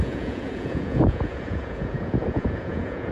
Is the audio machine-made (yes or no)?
yes